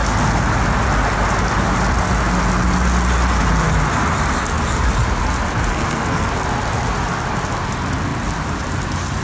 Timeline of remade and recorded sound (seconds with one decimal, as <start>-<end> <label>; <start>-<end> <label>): 0.0-5.7 recorded; 5.7-6.3 remade; 6.3-9.2 recorded